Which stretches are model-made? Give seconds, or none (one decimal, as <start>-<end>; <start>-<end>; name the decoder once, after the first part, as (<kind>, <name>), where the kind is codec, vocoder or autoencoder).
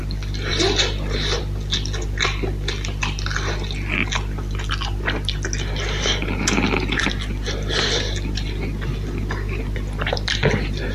none